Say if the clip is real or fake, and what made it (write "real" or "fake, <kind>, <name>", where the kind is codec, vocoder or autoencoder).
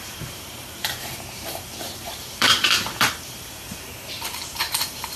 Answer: fake, vocoder, BigVGAN v2